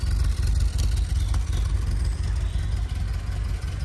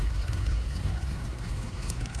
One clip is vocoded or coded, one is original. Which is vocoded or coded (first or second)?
second